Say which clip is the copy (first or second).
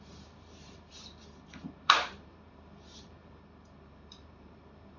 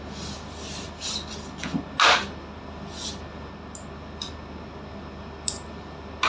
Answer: first